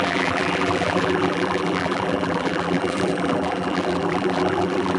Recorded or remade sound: remade